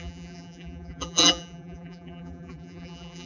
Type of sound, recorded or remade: remade